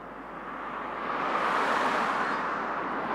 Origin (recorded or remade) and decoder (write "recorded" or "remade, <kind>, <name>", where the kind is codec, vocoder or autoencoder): recorded